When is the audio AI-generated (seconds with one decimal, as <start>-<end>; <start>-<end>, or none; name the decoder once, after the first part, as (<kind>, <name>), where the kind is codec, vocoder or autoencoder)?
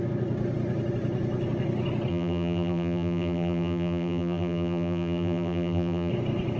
2.1-6.1 (vocoder, BigVGAN v2)